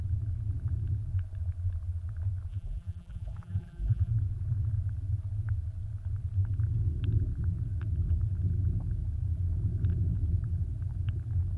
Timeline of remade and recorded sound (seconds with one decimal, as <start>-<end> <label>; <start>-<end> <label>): 0.0-2.5 recorded; 2.5-4.1 remade; 4.1-11.6 recorded